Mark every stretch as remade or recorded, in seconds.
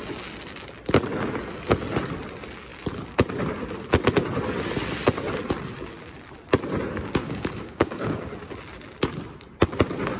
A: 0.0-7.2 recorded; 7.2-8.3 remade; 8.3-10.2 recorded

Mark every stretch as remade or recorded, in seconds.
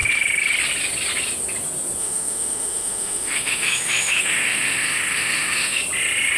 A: 0.0-2.0 recorded; 2.0-5.8 remade; 5.8-6.4 recorded